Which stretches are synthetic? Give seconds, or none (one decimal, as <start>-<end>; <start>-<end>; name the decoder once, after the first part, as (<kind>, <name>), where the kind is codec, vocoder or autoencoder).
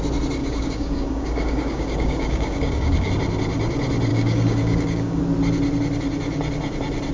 0.4-3.1 (codec, DAC); 4.1-5.2